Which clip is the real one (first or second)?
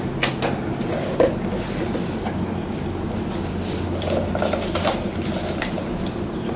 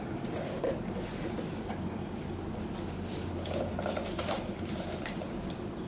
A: first